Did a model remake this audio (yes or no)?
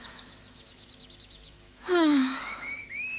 yes